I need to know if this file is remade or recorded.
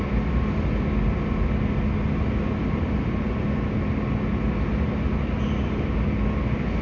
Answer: recorded